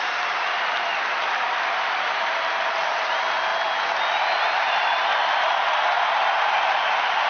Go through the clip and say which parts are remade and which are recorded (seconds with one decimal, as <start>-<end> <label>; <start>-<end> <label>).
0.0-3.5 remade; 3.5-6.4 recorded; 6.4-7.3 remade